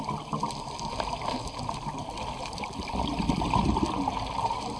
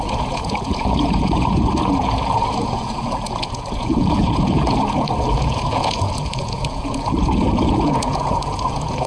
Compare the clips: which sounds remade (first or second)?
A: second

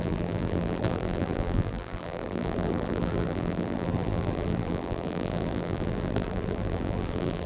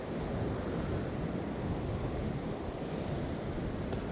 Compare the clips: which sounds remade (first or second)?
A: first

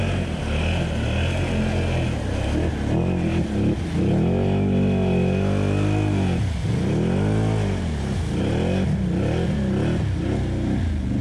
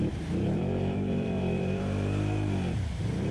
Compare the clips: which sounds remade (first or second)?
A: second